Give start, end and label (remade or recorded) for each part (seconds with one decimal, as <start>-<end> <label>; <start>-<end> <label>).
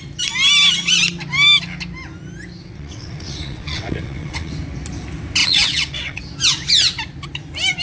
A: 0.0-2.6 recorded; 2.6-4.5 remade; 4.5-5.4 recorded; 5.4-6.2 remade; 6.2-7.8 recorded